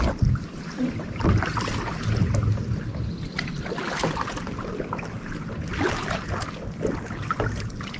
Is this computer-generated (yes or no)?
no